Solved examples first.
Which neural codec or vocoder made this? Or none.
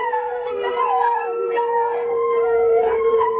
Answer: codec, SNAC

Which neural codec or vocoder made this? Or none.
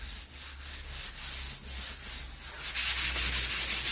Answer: none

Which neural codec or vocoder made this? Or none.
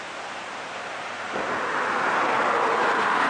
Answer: none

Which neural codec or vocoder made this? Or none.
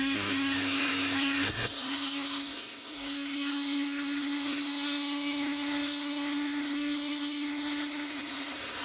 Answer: codec, SNAC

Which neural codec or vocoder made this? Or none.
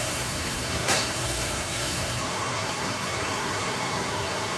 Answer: codec, SNAC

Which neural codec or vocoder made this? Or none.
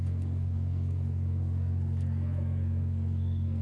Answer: codec, SNAC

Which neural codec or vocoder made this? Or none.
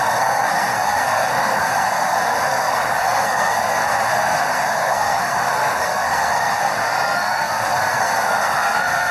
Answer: codec, SNAC